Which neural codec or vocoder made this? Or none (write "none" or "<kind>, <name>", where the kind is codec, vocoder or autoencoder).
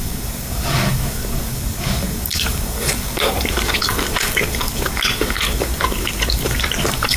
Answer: codec, DAC